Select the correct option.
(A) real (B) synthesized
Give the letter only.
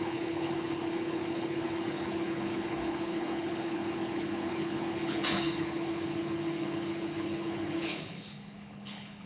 B